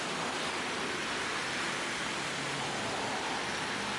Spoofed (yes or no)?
no